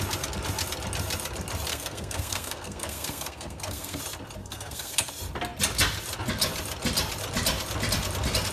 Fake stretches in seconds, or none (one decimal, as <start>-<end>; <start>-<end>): 1.7-4.0; 4.4-5.1